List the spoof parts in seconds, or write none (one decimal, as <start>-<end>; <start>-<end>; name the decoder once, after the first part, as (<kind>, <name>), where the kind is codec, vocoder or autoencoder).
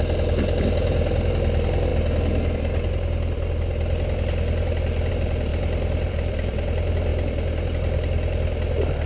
none